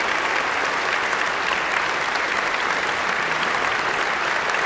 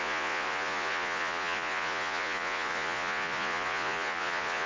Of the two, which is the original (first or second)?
first